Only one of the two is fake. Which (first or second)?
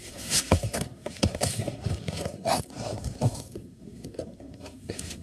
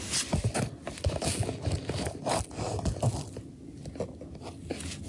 first